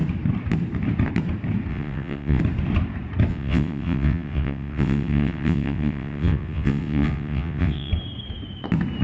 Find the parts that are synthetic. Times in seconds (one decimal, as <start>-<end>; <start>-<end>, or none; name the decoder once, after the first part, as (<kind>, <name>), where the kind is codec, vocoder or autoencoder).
1.7-2.4 (vocoder, WaveNeXt); 3.3-7.9